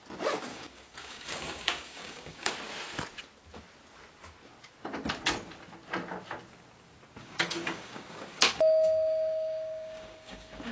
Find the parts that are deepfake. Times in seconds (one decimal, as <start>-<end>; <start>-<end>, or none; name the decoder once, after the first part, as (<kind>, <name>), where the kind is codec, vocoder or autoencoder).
0.5-2.5 (codec, DAC); 7.2-10.7